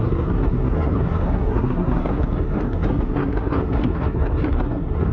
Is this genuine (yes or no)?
no